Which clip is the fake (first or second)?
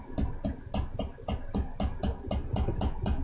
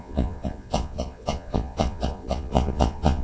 second